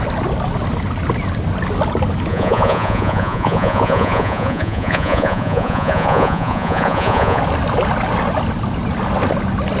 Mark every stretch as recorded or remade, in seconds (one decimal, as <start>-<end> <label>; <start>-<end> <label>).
0.0-2.3 recorded; 2.3-7.4 remade; 7.4-9.8 recorded